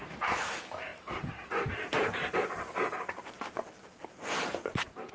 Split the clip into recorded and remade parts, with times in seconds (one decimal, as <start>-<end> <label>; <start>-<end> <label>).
0.0-5.1 remade